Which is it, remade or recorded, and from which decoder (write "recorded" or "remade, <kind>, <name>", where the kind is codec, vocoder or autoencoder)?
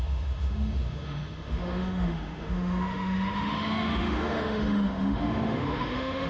remade, autoencoder, DAC-VAE